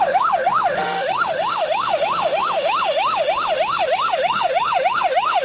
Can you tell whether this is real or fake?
fake